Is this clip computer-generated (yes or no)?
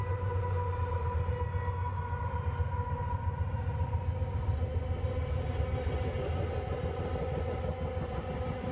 no